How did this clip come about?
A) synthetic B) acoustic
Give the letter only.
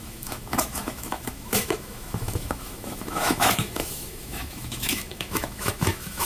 A